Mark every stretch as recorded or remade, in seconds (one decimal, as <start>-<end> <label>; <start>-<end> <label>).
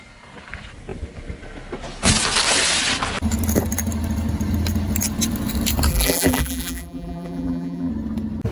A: 0.0-5.9 recorded; 5.9-7.9 remade; 7.9-8.5 recorded